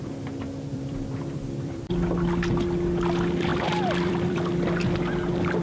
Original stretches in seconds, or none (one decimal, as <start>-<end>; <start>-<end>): 0.0-0.7; 1.9-3.5; 4.5-5.6